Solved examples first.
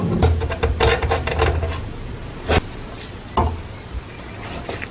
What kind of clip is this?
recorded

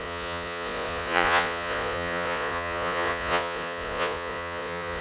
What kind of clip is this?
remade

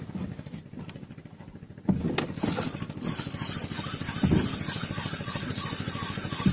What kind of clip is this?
recorded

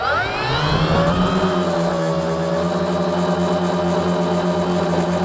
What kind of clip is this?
recorded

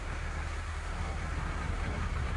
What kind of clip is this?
remade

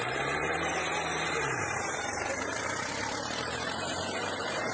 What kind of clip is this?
remade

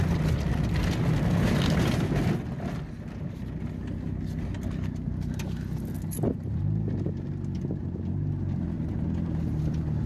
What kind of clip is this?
recorded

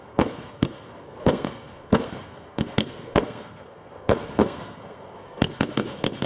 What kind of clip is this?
remade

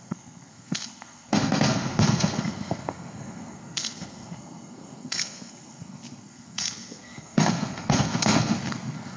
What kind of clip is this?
remade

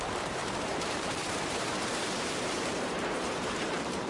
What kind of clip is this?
remade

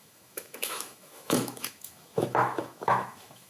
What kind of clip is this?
remade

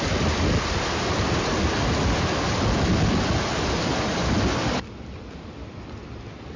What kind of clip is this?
recorded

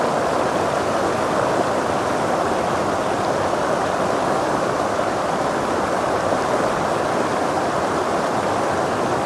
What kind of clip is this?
recorded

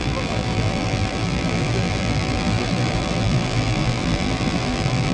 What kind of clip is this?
remade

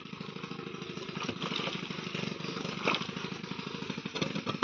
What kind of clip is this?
recorded